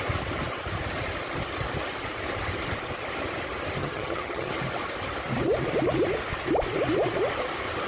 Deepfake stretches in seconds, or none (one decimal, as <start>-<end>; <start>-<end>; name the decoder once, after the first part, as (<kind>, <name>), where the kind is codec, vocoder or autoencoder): 3.8-4.5 (vocoder, HiFi-GAN)